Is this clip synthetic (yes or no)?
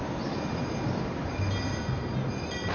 no